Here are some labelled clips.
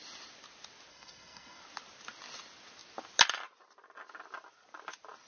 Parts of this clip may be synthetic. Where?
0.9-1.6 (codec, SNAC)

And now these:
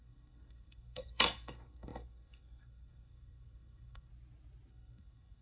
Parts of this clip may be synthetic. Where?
0.0-4.1 (codec, SNAC); 4.7-5.4

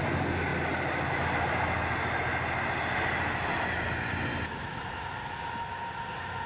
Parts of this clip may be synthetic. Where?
none

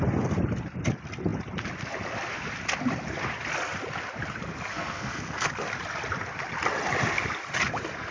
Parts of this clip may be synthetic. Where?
4.7-5.5 (codec, SNAC)